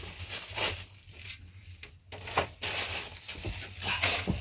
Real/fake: real